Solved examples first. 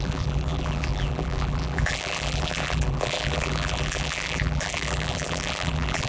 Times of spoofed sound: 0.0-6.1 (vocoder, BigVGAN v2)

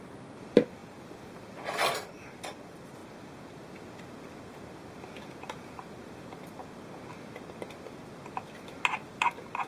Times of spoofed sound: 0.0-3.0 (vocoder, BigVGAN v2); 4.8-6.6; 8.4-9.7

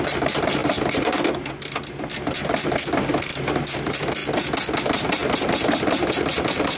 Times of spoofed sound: 0.0-4.2 (vocoder, BigVGAN v2); 4.8-6.8